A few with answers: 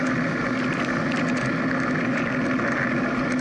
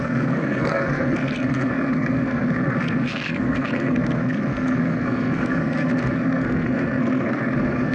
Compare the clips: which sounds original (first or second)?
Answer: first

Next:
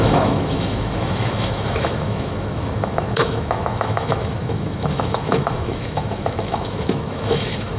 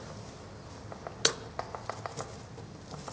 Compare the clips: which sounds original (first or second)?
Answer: second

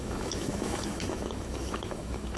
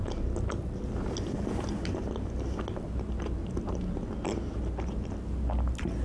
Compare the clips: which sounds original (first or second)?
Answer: second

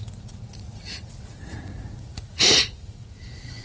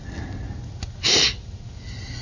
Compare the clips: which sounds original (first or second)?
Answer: second